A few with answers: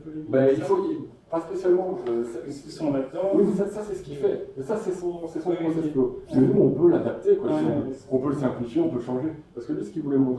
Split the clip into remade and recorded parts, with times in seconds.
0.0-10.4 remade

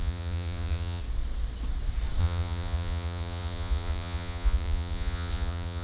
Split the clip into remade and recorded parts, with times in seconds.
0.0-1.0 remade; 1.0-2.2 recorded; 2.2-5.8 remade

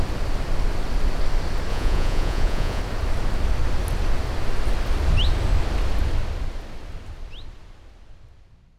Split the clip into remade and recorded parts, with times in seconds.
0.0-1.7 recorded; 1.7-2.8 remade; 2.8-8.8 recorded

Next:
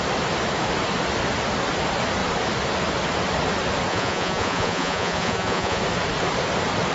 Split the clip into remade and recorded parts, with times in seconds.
0.0-3.9 recorded; 3.9-5.8 remade; 5.8-6.9 recorded